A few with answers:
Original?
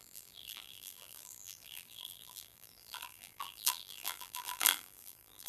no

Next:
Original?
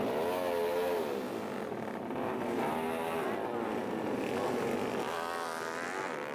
yes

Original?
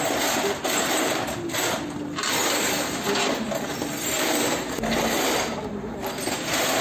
yes